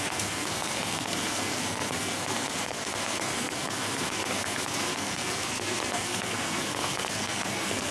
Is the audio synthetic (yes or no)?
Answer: yes